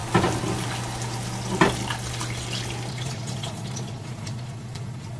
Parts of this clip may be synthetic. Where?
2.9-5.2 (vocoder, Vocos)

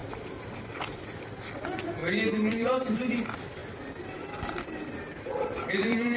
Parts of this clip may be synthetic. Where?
0.0-2.0 (vocoder, BigVGAN v2); 2.5-3.6; 5.0-6.2

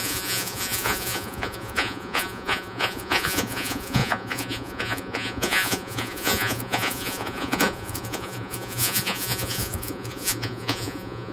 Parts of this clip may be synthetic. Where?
0.0-11.3 (vocoder, Vocos)

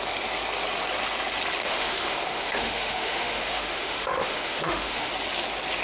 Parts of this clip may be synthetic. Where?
1.6-5.1 (autoencoder, DAC-VAE)

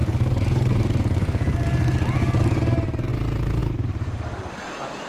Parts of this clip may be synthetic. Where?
0.0-3.1 (codec, DAC)

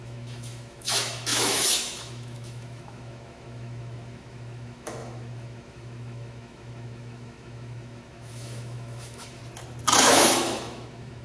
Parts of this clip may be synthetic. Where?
0.0-9.4 (autoencoder, DAC-VAE); 10.0-11.2